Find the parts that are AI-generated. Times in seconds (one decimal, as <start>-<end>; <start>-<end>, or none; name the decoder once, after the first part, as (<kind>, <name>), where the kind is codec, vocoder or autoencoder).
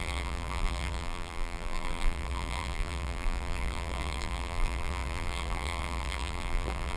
0.0-7.0 (vocoder, BigVGAN v2)